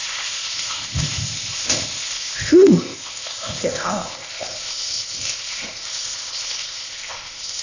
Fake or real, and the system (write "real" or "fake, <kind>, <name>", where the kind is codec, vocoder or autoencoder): fake, codec, ZipCodec